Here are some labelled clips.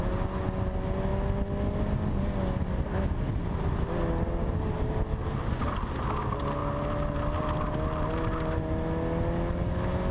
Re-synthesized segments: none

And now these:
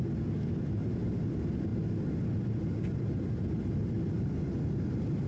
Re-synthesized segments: none

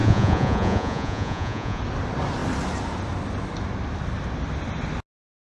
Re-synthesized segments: 0.0-1.8 (vocoder, Vocos)

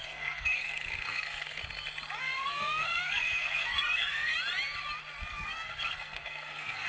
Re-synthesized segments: 0.0-1.6 (codec, SNAC); 2.2-4.3; 5.3-6.9